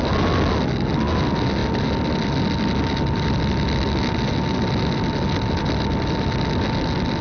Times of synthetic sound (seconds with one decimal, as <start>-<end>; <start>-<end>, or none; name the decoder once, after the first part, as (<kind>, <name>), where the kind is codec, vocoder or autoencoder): none